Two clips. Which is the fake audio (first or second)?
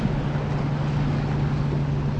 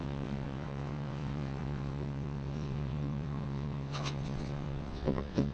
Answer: second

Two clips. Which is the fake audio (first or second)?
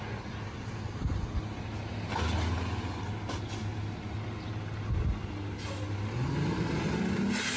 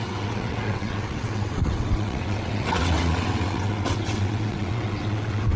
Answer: second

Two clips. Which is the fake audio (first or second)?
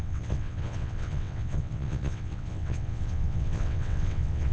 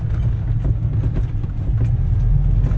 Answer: first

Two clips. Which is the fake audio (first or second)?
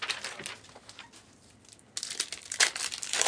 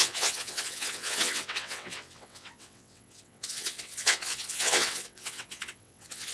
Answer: second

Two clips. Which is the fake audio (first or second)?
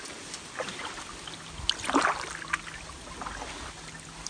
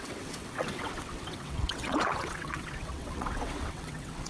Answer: second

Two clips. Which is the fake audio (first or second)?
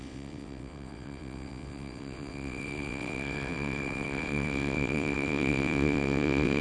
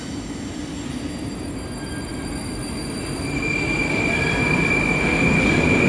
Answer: first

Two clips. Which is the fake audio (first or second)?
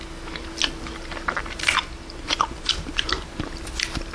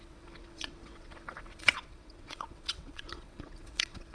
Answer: second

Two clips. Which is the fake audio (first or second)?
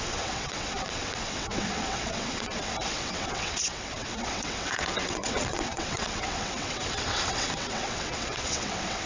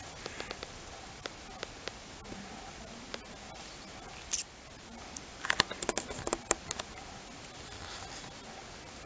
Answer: first